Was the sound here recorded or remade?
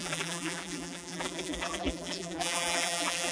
remade